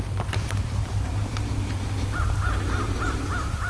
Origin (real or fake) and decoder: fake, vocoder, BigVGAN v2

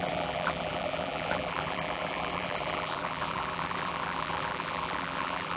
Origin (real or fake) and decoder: fake, vocoder, BigVGAN v2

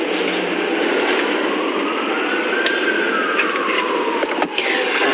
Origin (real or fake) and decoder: fake, vocoder, BigVGAN v2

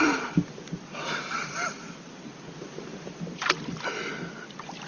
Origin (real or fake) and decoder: fake, vocoder, BigVGAN v2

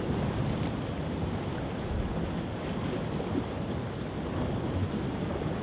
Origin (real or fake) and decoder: real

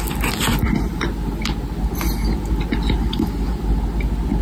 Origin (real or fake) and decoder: real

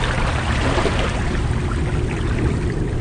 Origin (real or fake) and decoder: real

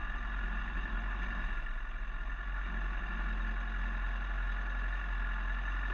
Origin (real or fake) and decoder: real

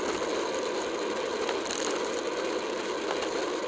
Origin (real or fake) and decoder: real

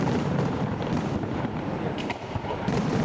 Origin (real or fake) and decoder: fake, vocoder, BigVGAN v2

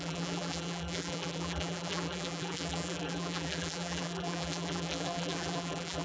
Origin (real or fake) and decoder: fake, vocoder, BigVGAN v2